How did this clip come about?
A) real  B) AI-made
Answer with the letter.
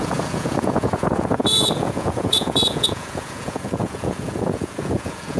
B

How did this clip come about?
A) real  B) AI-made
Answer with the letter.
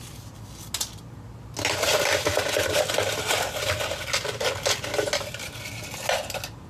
A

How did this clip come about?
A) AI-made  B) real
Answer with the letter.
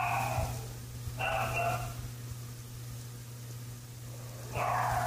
B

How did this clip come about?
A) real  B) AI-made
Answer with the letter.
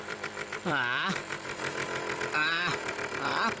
B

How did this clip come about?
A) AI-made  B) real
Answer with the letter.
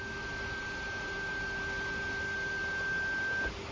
B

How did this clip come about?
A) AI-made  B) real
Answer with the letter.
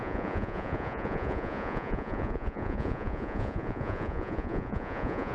A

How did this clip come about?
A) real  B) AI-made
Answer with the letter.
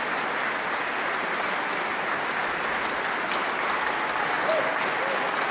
A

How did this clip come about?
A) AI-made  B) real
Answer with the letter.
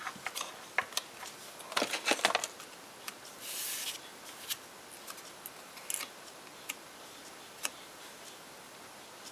B